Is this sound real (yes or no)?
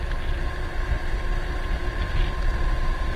yes